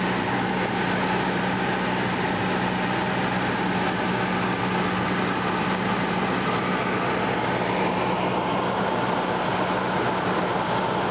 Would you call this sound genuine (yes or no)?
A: yes